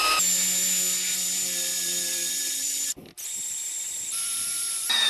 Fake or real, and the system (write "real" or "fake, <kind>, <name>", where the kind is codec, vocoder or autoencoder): real